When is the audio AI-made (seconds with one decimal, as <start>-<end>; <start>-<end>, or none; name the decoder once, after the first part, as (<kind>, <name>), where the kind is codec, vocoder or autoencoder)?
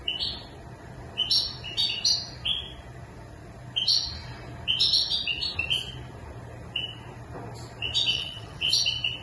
8.1-8.7 (vocoder, WaveNeXt)